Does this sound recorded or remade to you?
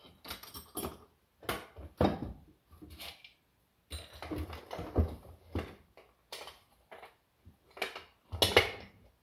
recorded